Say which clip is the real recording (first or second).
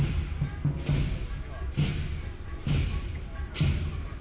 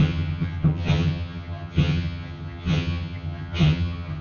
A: first